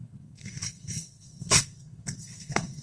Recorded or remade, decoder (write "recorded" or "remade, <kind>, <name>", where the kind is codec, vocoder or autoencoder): remade, codec, SNAC